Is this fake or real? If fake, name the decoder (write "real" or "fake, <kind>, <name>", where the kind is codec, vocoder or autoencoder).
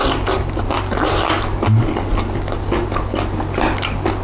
real